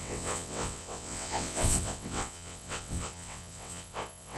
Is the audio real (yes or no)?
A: no